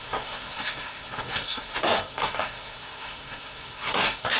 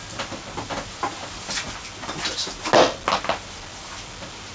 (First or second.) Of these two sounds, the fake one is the first